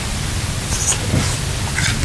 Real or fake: real